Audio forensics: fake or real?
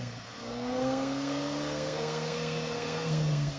fake